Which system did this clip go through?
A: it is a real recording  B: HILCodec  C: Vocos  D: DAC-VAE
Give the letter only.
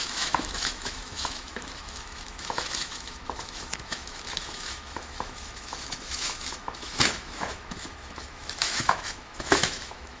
D